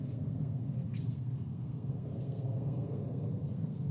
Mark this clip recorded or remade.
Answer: remade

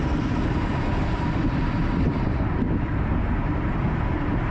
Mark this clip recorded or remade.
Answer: recorded